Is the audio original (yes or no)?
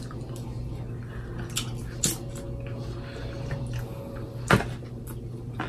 yes